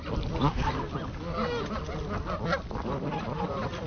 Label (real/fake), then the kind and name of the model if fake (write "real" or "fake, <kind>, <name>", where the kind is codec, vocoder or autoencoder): real